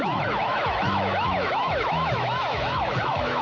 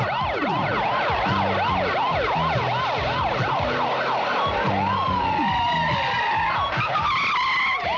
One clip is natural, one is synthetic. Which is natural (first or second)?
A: second